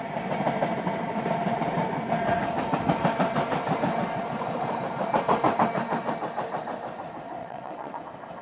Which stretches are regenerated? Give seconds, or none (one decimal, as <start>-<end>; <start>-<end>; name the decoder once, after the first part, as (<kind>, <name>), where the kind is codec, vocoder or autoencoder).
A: 7.4-8.0 (vocoder, WaveNeXt)